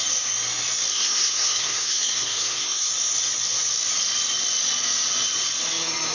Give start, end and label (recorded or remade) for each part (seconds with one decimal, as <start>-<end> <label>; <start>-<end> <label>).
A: 0.0-0.9 recorded; 0.9-2.9 remade; 2.9-6.1 recorded

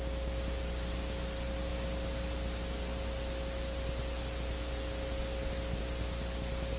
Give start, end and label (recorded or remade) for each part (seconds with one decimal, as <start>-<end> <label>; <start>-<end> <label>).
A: 0.0-6.8 recorded